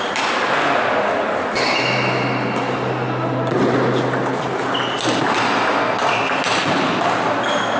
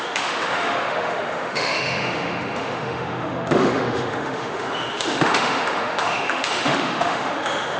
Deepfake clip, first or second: second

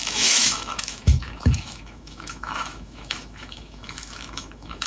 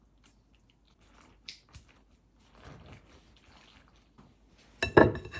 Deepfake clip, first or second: first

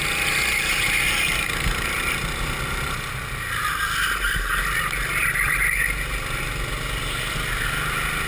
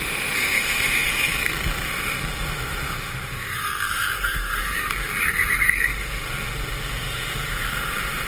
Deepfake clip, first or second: second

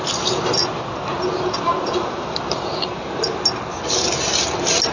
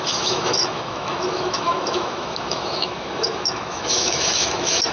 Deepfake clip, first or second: second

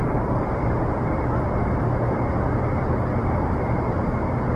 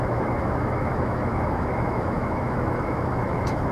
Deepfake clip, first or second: second